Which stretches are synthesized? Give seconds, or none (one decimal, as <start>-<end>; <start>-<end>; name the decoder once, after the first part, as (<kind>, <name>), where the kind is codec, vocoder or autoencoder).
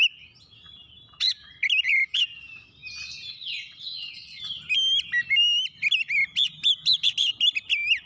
3.3-4.4 (vocoder, WaveNeXt)